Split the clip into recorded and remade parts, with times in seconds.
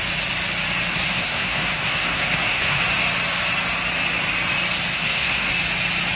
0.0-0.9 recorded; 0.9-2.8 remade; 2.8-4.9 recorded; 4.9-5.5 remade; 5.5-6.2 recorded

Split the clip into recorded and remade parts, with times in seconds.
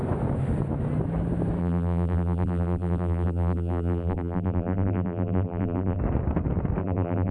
0.0-1.6 recorded; 1.6-6.0 remade; 6.0-6.8 recorded; 6.8-7.3 remade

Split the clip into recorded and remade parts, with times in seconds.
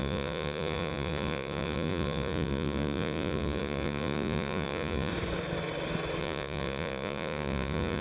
0.0-5.1 remade; 5.1-6.2 recorded; 6.2-8.0 remade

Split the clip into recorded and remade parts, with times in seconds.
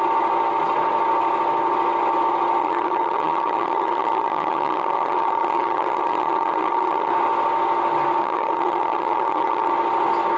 0.0-2.6 recorded; 2.6-7.1 remade; 7.1-8.2 recorded; 8.2-9.7 remade; 9.7-10.4 recorded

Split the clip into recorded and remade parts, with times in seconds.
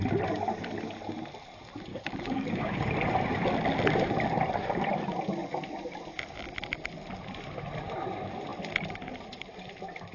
0.0-1.9 recorded; 1.9-2.9 remade; 2.9-10.1 recorded